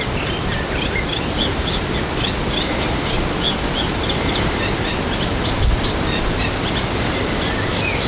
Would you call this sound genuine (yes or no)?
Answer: yes